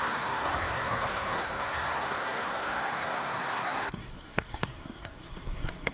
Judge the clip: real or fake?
fake